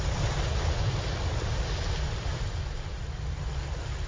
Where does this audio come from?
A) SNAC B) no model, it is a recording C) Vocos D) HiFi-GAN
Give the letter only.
B